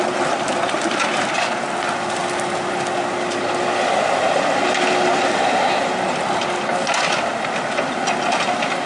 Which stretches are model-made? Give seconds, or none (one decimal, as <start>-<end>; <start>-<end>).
none

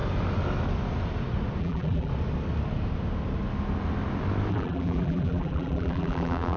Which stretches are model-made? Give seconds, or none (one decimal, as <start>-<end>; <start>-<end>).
1.6-2.1; 4.5-6.6

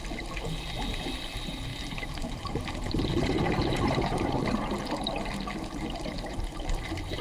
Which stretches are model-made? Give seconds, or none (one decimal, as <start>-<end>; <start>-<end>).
1.7-4.3

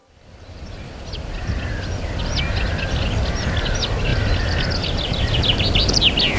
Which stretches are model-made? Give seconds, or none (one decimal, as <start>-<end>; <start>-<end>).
0.0-1.0; 4.1-5.9

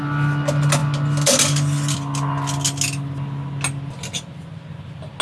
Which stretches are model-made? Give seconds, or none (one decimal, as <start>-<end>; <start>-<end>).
none

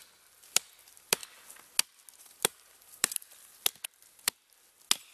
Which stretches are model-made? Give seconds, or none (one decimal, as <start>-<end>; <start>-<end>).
0.0-1.2; 2.2-3.3